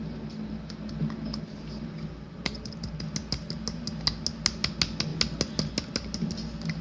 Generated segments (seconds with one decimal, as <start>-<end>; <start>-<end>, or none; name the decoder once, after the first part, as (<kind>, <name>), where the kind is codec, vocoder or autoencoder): none

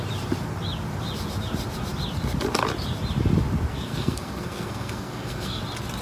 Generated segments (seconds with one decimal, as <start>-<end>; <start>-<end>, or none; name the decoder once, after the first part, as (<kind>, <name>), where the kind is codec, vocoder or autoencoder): 3.7-5.6 (codec, SNAC)